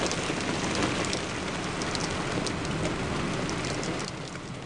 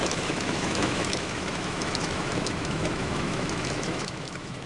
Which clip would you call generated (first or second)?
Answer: second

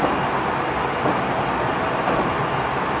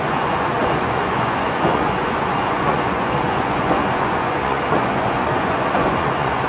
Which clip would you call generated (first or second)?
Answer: second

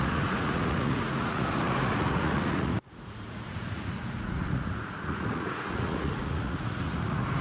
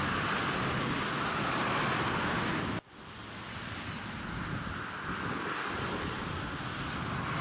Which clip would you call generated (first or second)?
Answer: first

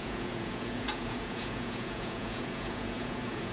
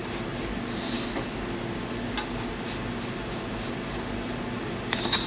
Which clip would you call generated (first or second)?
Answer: first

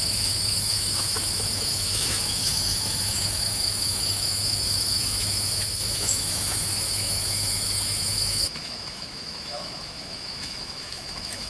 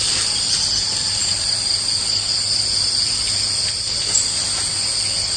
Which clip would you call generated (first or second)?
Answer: first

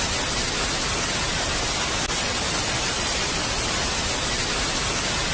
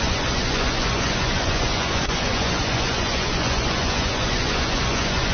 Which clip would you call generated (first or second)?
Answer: second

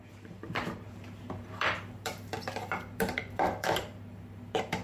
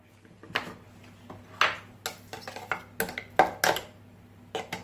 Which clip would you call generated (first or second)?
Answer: first